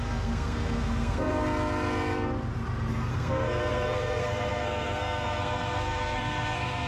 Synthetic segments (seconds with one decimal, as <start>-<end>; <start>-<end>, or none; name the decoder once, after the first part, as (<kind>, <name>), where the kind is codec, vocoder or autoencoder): 0.0-1.4 (codec, SNAC); 2.9-6.9